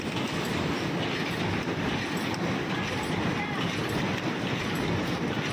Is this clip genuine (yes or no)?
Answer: yes